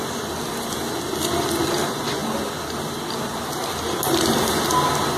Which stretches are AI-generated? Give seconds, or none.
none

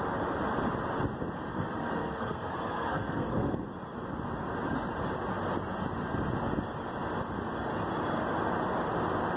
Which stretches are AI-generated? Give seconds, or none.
1.5-3.7 (codec, SNAC)

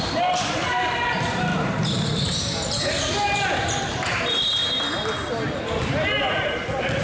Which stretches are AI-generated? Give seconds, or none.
0.0-1.5 (vocoder, BigVGAN v2); 2.8-4.6

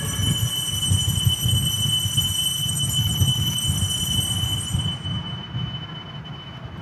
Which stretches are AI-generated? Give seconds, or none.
2.6-3.6 (autoencoder, DAC-VAE)

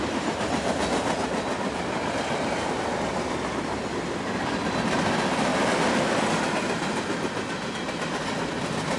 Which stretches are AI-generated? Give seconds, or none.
none